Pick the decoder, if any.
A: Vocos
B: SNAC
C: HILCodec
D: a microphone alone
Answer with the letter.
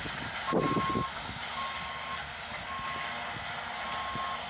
D